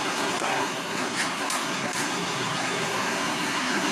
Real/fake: fake